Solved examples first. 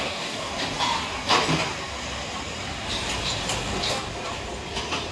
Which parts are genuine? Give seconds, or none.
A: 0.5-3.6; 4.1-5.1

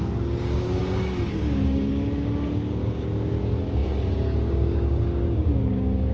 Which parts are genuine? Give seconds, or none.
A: none

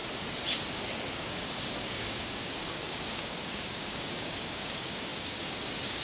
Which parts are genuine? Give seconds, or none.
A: 0.0-1.1